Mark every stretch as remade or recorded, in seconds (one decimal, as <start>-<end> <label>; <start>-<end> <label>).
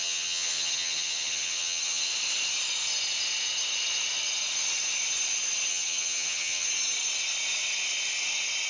0.0-2.1 remade; 2.1-5.7 recorded; 5.7-6.7 remade; 6.7-8.7 recorded